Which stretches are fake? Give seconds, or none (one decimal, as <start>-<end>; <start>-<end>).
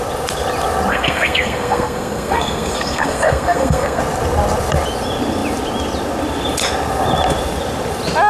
0.9-4.0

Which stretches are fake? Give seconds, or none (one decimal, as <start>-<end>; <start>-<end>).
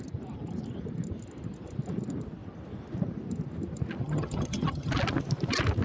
4.0-4.9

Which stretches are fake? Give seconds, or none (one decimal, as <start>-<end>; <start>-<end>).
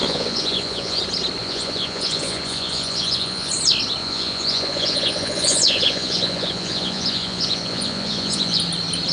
0.0-1.0; 1.4-3.5; 4.0-8.6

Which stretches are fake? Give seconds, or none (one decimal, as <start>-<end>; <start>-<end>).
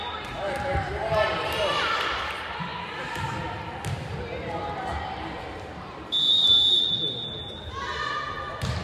2.7-3.4